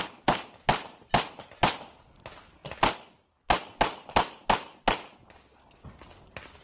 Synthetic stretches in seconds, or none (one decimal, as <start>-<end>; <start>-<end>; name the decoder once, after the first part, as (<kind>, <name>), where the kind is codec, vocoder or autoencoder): none